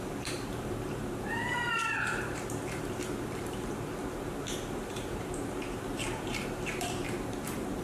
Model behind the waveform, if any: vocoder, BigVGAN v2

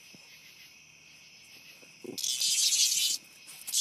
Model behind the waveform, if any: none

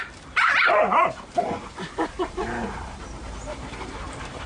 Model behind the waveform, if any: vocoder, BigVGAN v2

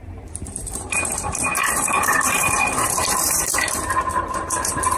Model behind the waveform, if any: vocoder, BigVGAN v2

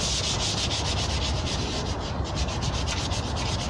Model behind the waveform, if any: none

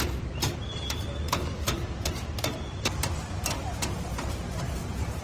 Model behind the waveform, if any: vocoder, BigVGAN v2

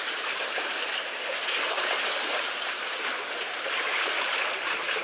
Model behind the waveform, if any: vocoder, BigVGAN v2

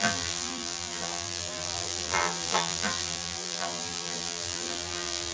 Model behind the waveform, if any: vocoder, BigVGAN v2